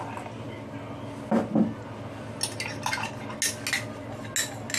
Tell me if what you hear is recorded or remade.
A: recorded